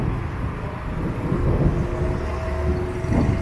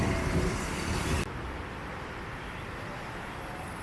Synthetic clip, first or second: second